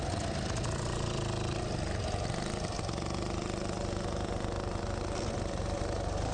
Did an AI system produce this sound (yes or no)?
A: no